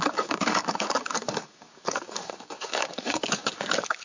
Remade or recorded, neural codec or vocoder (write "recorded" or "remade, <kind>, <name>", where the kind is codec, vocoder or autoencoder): remade, codec, DAC